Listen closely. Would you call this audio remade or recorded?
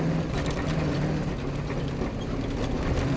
recorded